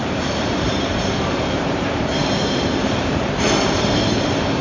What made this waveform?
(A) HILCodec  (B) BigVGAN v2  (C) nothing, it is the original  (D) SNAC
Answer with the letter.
B